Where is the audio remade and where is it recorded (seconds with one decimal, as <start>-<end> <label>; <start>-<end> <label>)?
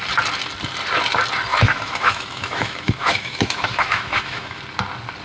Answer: 0.0-1.5 recorded; 1.5-4.6 remade; 4.6-5.2 recorded